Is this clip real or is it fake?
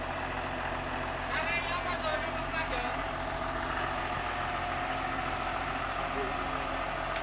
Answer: real